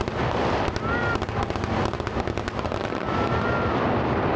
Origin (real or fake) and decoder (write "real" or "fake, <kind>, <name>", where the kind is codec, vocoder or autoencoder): real